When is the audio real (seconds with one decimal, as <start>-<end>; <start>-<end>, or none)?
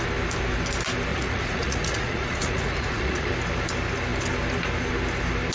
0.0-1.1; 3.3-5.5